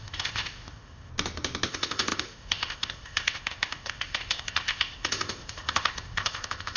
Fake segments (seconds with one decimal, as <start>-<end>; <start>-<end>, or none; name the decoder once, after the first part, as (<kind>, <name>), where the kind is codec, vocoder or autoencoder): 0.0-1.1 (codec, ZipCodec); 1.7-6.8